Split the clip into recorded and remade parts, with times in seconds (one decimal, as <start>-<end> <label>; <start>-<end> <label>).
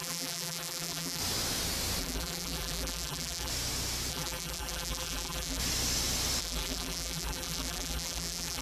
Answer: 0.0-1.2 remade; 1.2-2.0 recorded; 2.0-3.5 remade; 3.5-4.1 recorded; 4.1-5.6 remade; 5.6-6.4 recorded; 6.4-8.6 remade